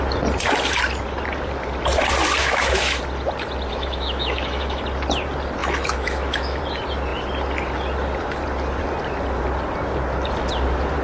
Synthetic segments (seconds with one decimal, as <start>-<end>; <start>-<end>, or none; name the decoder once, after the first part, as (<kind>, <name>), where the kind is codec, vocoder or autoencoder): 2.4-3.0 (autoencoder, DAC-VAE); 3.7-4.8; 5.6-6.6